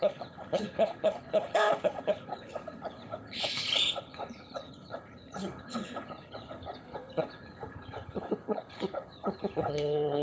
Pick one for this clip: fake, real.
fake